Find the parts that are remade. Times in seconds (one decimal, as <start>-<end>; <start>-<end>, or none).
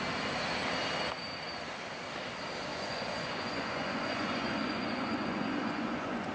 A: 2.7-6.3